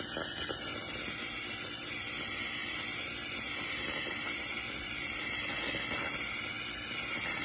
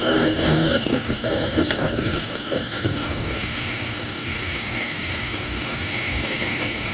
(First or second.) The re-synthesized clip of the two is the second